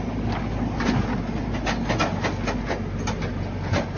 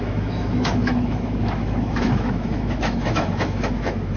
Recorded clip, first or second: first